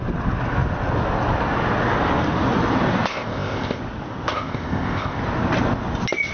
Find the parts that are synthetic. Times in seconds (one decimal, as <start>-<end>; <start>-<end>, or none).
3.1-3.8; 4.3-5.2